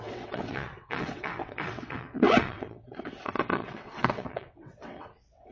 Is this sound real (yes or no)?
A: no